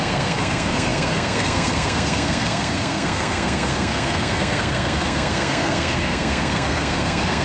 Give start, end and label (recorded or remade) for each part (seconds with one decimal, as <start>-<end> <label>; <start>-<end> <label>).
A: 0.0-7.4 remade